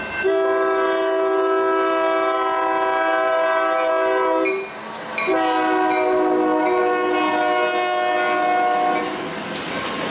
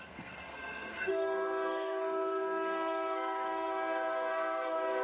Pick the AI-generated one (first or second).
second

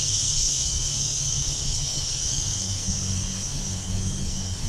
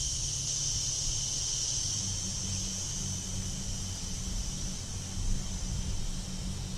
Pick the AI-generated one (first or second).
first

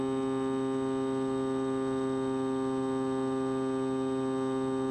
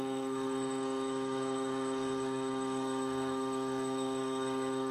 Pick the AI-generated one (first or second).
second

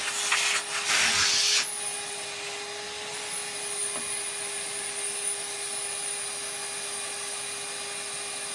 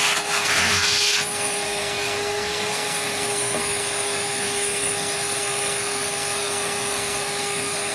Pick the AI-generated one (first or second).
second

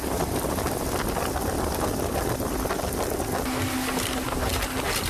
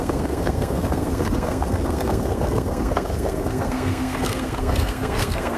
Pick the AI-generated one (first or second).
second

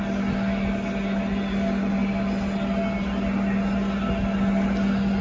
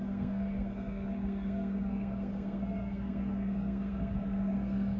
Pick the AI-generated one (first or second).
second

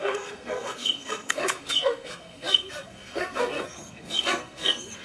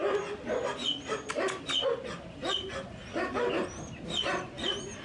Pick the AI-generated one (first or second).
first